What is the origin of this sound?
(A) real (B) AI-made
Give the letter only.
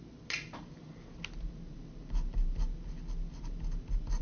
A